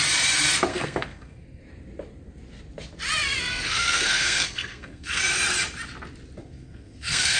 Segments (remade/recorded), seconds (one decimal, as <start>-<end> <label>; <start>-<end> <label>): 0.0-0.7 recorded; 0.7-1.6 remade; 1.6-3.5 recorded; 3.5-5.2 remade; 5.2-6.4 recorded; 6.4-7.4 remade